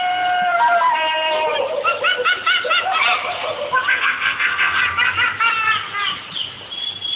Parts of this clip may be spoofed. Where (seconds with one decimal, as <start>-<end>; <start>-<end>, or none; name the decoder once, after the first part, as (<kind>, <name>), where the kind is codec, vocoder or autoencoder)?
3.9-4.8 (codec, SNAC)

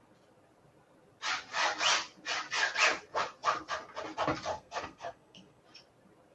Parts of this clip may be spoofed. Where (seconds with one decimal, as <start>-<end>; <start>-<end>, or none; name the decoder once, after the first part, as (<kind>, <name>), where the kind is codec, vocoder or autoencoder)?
4.5-5.6 (codec, SNAC)